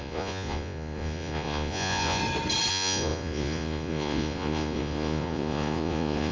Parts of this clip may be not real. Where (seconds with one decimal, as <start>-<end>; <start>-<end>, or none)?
0.0-2.2; 2.7-6.3